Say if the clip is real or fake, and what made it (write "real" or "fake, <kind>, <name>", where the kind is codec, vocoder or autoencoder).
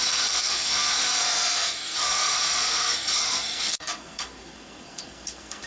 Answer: fake, codec, SNAC